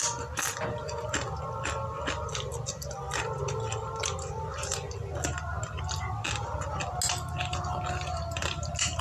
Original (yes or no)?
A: yes